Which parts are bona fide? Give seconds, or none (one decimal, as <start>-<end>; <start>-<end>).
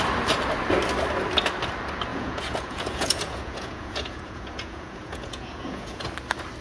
0.0-2.1; 6.1-6.6